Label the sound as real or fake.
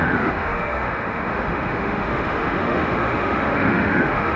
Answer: fake